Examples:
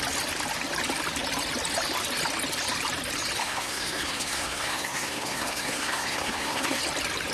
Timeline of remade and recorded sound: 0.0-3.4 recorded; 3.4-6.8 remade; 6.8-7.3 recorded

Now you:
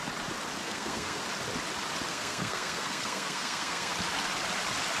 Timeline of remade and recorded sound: 0.0-0.6 recorded; 0.6-1.2 remade; 1.2-2.1 recorded; 2.1-3.9 remade; 3.9-5.0 recorded

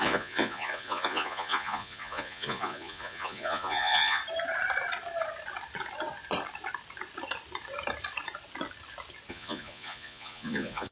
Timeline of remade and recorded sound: 0.0-4.2 remade; 4.2-9.3 recorded; 9.3-10.9 remade

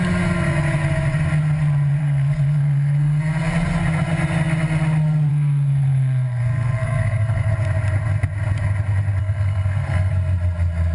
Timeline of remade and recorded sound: 0.0-2.0 recorded; 2.0-3.2 remade; 3.2-5.3 recorded; 5.3-7.5 remade; 7.5-9.2 recorded; 9.2-10.1 remade; 10.1-10.9 recorded

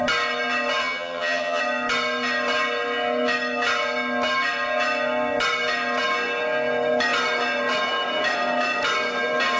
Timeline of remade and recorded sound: 0.0-0.8 recorded; 0.8-1.6 remade; 1.6-9.6 recorded

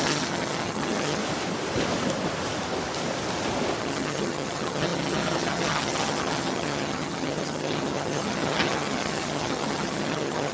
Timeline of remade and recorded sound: 0.0-1.2 remade; 1.2-3.8 recorded; 3.8-10.5 remade

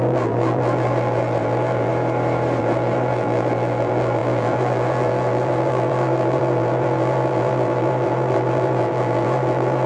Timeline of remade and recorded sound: 0.0-1.9 remade; 1.9-2.6 recorded; 2.6-9.9 remade